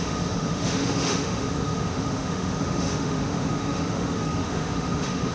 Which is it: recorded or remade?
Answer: remade